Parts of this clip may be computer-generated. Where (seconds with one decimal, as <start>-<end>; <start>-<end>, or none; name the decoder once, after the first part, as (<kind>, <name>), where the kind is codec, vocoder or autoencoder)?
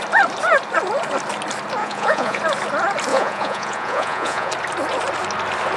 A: 1.8-2.4 (vocoder, Vocos); 3.1-4.5